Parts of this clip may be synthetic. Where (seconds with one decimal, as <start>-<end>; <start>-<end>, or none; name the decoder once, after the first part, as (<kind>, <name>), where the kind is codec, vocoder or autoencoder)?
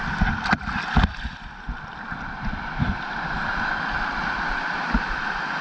0.0-0.8 (vocoder, BigVGAN v2); 1.9-3.2